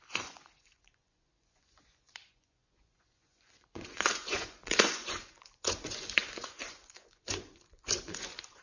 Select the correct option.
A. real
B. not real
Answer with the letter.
B